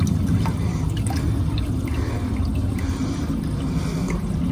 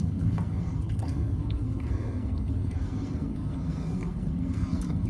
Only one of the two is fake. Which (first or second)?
second